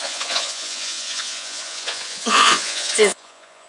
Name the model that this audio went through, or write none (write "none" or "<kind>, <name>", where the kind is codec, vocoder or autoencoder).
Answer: vocoder, Vocos